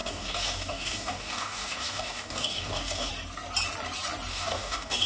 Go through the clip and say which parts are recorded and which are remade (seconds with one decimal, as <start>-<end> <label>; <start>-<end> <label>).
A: 0.0-3.1 remade; 3.1-4.3 recorded; 4.3-5.1 remade